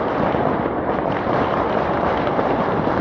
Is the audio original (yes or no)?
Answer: yes